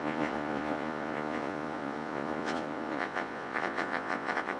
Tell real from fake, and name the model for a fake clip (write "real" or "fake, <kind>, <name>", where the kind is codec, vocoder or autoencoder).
fake, vocoder, Vocos